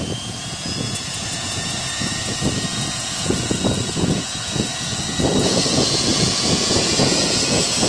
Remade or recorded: remade